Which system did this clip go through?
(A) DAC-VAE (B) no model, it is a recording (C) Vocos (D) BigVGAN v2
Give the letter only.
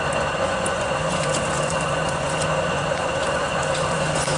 C